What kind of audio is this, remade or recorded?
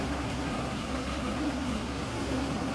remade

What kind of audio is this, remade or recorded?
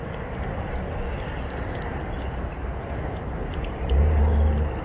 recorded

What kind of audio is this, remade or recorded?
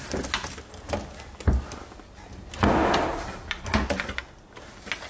recorded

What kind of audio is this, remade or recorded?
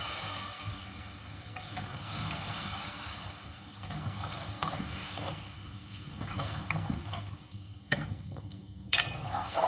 remade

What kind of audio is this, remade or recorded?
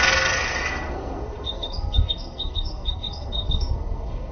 remade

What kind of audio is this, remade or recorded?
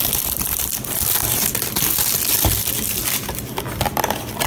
remade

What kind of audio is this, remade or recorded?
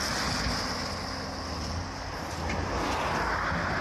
recorded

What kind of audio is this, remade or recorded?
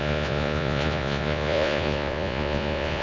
remade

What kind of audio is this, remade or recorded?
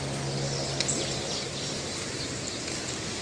recorded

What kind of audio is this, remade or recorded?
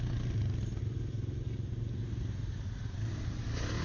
recorded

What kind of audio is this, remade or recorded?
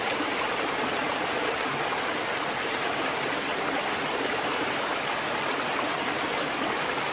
recorded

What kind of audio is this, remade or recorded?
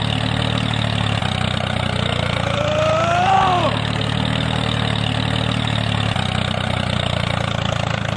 recorded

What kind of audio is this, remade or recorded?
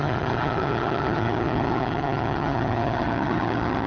remade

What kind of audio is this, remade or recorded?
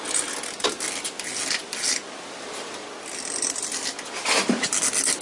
recorded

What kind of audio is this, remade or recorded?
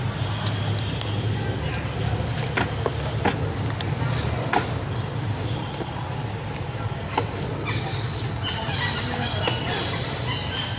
recorded